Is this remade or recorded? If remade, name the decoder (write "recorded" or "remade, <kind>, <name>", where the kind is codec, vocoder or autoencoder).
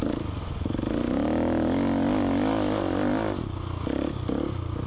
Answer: recorded